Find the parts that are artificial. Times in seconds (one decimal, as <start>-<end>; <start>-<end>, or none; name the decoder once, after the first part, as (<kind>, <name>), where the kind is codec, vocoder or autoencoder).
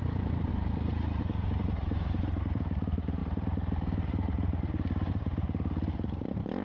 0.0-0.5 (vocoder, BigVGAN v2); 1.2-6.6